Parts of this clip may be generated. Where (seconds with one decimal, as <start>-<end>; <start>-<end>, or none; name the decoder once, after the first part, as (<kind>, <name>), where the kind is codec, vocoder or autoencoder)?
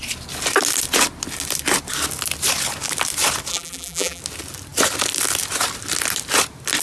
3.5-4.2 (vocoder, BigVGAN v2)